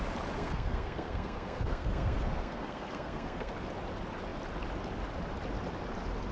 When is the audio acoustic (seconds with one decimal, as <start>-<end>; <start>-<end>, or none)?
0.0-0.4; 3.5-6.3